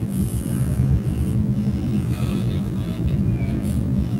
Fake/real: fake